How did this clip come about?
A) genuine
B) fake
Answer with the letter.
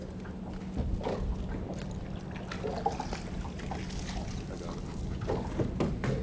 A